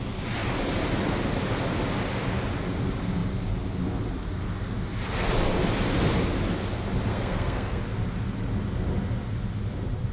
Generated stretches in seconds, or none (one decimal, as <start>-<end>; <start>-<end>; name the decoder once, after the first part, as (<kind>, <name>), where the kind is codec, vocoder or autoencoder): 7.1-7.8 (codec, SNAC)

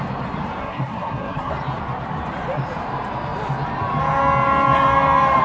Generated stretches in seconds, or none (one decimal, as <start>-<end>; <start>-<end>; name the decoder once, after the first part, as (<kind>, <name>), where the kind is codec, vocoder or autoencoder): 0.6-1.5 (codec, SNAC)

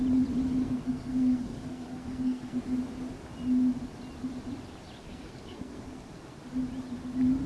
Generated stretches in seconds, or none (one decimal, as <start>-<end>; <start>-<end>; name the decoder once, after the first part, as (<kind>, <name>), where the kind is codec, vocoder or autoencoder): 0.6-2.6 (codec, SNAC); 5.0-6.4

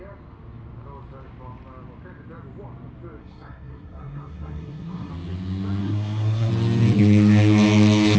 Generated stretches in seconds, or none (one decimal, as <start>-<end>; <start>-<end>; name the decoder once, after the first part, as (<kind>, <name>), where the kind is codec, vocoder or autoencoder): 3.2-5.1 (codec, SNAC); 5.8-6.5

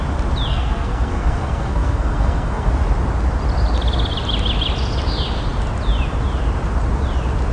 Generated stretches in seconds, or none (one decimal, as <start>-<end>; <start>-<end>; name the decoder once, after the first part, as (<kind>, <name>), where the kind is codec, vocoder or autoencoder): 0.5-2.7 (codec, SNAC)

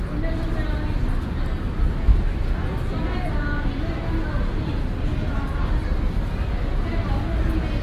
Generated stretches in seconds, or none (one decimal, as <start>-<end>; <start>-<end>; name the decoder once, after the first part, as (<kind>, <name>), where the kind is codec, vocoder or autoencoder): none

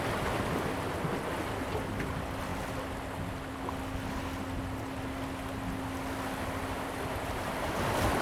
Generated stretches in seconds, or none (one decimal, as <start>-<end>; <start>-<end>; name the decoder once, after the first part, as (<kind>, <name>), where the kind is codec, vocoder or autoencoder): none

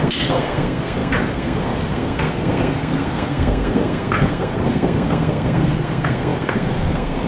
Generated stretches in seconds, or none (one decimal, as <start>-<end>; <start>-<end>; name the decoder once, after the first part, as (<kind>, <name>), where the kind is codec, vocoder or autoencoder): 0.0-7.3 (codec, SNAC)